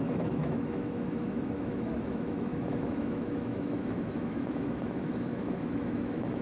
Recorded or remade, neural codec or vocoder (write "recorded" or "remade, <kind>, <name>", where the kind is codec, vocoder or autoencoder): remade, autoencoder, DAC-VAE